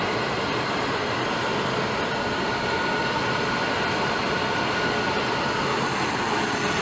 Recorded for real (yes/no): yes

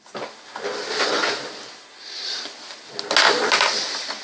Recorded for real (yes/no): yes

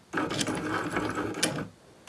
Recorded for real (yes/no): yes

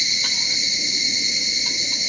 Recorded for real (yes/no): yes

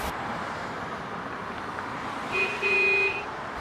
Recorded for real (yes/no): no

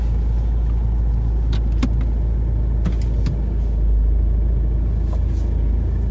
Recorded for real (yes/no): yes